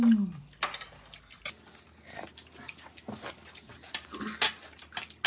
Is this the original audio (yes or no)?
yes